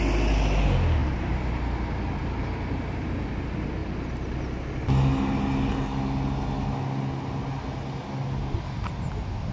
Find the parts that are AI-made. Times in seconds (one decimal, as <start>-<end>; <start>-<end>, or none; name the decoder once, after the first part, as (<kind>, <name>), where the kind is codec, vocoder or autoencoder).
none